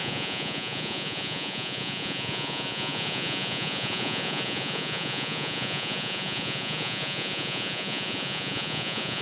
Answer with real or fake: fake